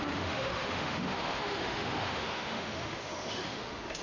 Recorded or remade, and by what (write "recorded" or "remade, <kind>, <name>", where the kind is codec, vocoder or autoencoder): remade, autoencoder, DAC-VAE